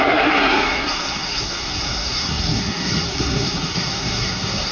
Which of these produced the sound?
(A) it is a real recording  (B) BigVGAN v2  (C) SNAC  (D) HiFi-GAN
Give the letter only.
C